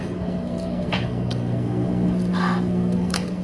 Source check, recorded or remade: remade